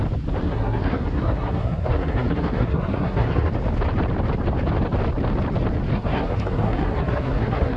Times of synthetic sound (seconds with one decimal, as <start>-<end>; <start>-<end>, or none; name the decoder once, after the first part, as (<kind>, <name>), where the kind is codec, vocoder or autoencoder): 0.4-3.5 (codec, SNAC); 5.9-7.8